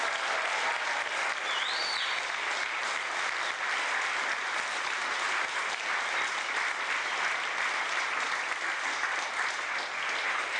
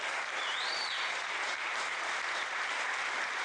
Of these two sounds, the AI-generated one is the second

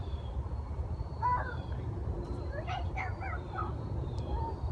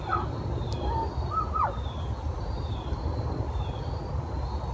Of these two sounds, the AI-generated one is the first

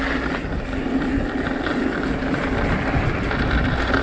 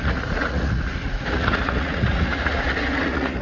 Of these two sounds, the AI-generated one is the second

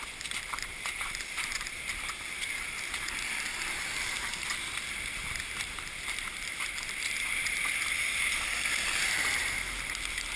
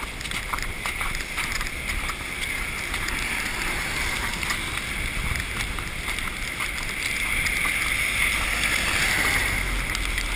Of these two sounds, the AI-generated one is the first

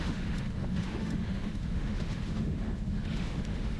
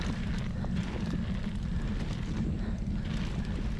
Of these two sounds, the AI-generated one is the first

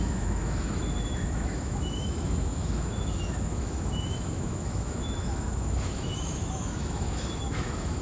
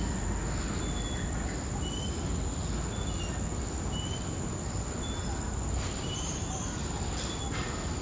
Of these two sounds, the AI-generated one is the first